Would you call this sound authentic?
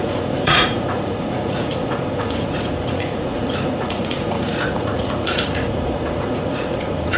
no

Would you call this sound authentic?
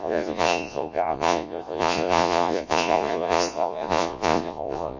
no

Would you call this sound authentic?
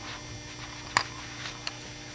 yes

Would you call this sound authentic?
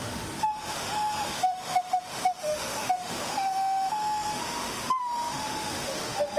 no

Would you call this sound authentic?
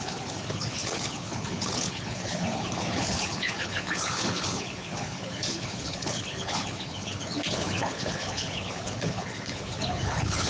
no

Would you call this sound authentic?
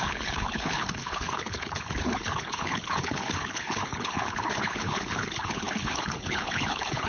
no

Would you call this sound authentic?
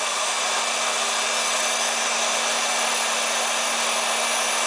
yes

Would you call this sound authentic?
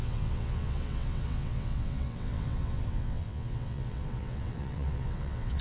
no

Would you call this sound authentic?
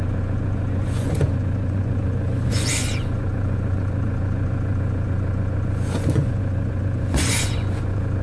no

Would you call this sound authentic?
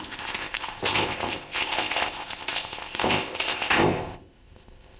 no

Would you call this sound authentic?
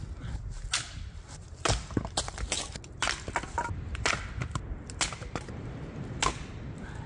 yes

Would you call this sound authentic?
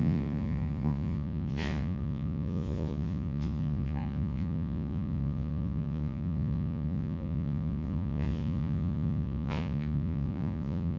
no